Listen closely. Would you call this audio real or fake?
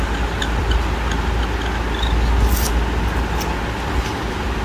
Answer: real